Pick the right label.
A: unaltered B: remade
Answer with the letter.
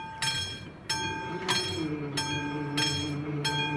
A